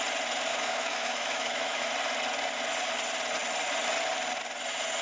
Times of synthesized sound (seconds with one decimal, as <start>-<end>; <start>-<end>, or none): 0.5-1.9